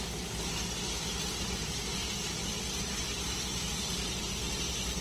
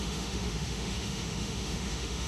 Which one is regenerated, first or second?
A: second